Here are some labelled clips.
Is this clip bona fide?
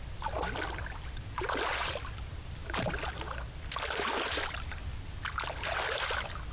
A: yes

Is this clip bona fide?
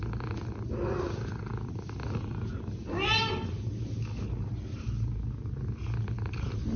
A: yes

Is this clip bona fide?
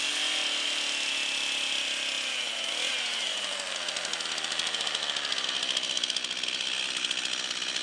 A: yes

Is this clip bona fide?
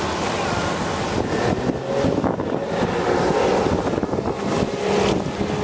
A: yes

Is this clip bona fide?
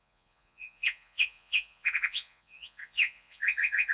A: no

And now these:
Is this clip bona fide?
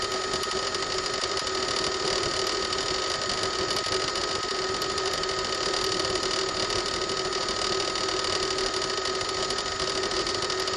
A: yes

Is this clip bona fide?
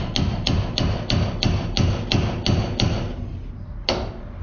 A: yes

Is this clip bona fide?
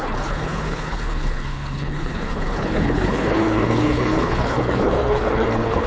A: no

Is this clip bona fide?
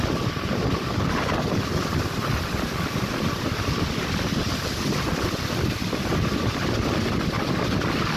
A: yes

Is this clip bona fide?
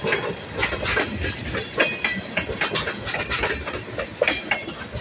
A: yes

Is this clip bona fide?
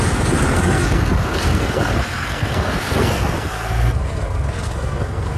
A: no